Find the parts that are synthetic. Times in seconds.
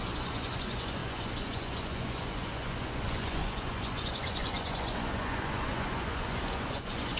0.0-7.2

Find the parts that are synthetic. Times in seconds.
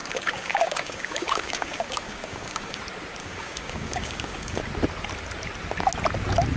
0.0-2.8; 3.2-4.6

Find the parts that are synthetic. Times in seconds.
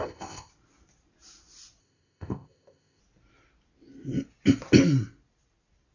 0.0-0.5; 1.8-3.0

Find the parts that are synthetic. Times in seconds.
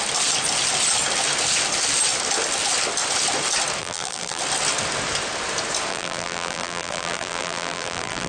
3.8-4.4; 5.9-8.3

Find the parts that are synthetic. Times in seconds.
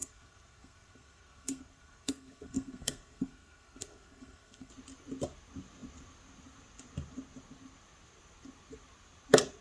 0.0-4.7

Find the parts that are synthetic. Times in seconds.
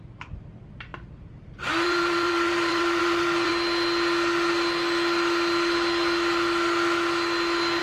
0.0-3.5